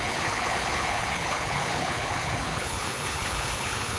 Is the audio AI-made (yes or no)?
yes